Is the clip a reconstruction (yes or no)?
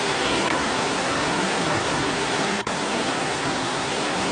yes